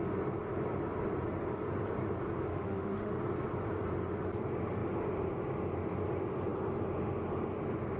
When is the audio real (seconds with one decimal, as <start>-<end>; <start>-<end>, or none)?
0.0-2.5; 3.2-8.0